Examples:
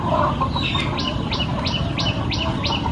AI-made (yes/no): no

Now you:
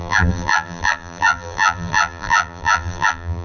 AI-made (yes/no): yes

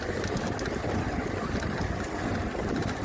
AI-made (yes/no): no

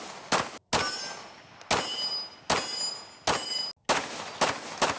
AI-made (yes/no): no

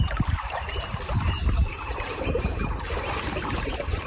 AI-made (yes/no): yes